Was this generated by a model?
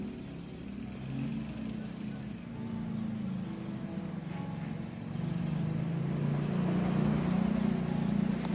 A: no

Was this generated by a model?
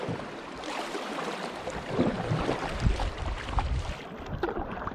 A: yes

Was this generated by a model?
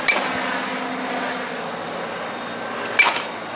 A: no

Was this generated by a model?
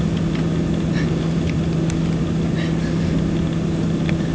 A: no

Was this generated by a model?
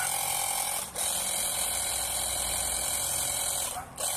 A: no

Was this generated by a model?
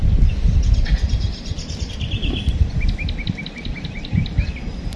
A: no